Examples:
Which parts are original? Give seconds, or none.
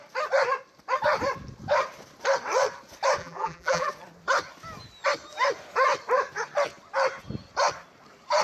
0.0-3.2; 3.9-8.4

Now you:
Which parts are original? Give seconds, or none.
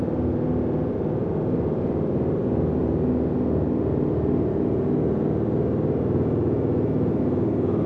0.0-7.9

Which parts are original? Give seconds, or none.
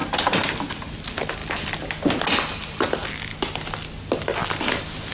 0.0-5.1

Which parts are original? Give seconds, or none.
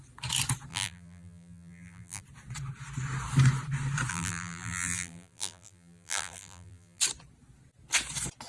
0.0-0.7; 2.2-4.1; 7.0-8.5